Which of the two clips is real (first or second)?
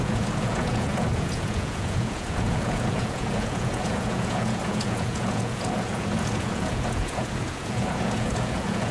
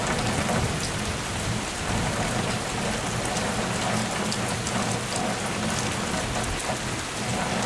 second